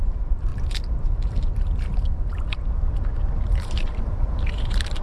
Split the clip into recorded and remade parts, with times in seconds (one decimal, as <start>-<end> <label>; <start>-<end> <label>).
0.0-0.5 remade; 0.5-3.5 recorded; 3.5-5.0 remade